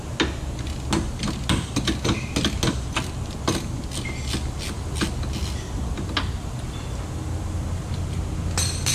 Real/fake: real